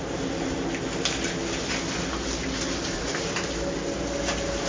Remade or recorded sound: recorded